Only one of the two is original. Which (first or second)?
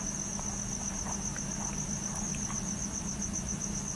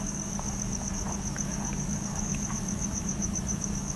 first